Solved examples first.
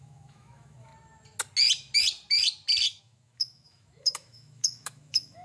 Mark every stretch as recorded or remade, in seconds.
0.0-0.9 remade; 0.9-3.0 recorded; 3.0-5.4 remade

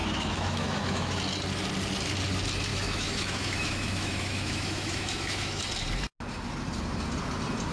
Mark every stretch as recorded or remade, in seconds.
0.0-1.2 remade; 1.2-2.7 recorded; 2.7-5.6 remade; 5.6-7.7 recorded

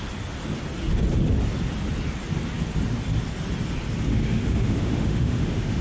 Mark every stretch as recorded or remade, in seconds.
0.0-4.1 recorded; 4.1-5.8 remade

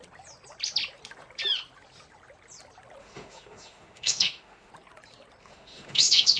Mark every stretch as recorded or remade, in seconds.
0.0-3.0 recorded; 3.0-4.7 remade; 4.7-5.4 recorded; 5.4-6.4 remade

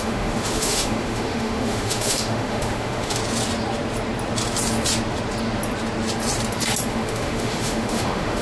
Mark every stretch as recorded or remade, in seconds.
0.0-3.2 remade; 3.2-6.9 recorded; 6.9-8.4 remade

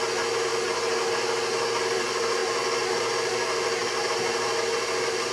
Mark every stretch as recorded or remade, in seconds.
0.0-5.3 recorded